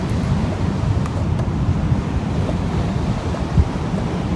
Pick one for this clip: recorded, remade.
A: remade